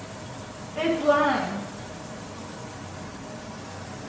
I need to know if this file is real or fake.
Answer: real